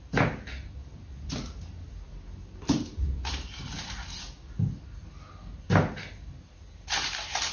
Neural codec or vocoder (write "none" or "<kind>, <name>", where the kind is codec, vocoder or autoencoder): none